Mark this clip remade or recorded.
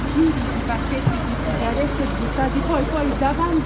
recorded